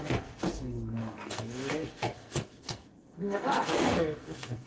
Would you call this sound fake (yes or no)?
yes